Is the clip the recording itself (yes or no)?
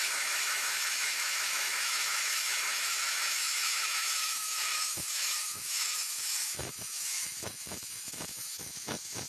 no